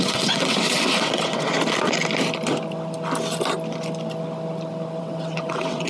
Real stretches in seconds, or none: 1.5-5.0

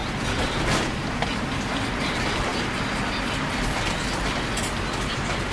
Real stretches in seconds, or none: 0.0-5.5

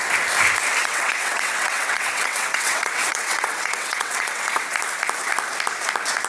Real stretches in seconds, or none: 0.0-0.8; 4.6-6.3

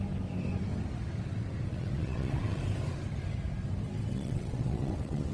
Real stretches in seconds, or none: 0.0-1.7; 2.6-4.1